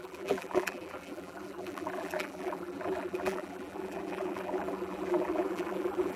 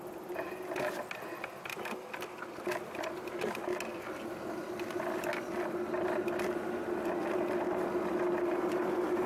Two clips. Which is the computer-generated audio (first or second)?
first